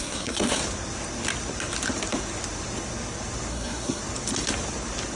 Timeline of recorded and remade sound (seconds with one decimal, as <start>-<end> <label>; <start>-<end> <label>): 0.0-0.6 remade; 0.6-3.5 recorded; 3.5-4.0 remade; 4.0-5.2 recorded